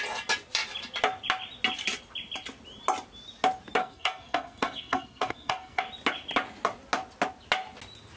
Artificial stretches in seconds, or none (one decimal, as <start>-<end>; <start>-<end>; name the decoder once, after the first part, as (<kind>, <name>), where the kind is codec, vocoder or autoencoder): 3.8-5.8 (codec, SNAC)